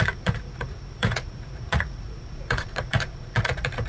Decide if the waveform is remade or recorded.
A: remade